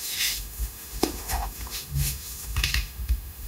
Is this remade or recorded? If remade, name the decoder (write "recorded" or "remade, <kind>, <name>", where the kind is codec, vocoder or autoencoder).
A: remade, autoencoder, DAC-VAE